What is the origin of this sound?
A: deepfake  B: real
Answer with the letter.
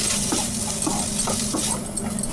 B